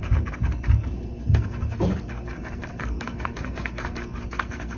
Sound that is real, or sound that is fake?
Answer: fake